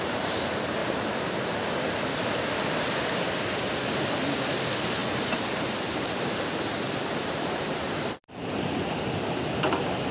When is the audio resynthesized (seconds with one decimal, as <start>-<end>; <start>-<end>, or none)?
0.8-1.6; 5.0-9.3